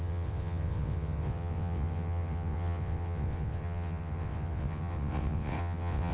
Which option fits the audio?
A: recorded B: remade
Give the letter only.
B